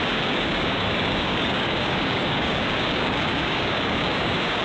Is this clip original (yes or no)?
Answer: no